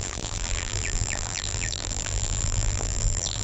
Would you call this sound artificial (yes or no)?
yes